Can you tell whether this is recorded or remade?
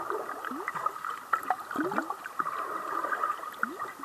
recorded